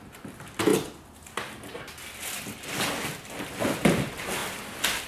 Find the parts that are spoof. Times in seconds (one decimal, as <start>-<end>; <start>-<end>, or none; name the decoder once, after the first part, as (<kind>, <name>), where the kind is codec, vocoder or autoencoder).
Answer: none